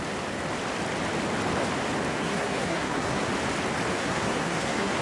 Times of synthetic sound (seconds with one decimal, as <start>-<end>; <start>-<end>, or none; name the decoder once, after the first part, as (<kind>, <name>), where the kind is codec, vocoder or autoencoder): 2.1-3.2 (codec, SNAC); 4.0-5.0